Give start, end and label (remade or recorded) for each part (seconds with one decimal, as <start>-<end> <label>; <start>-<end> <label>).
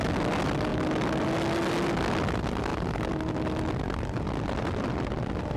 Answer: 0.0-5.6 recorded